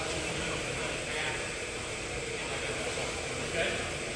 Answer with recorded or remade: recorded